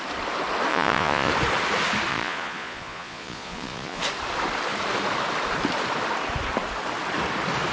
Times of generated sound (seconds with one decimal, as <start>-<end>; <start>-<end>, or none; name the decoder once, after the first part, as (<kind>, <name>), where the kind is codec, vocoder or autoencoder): 0.7-1.3 (vocoder, Vocos); 2.1-4.0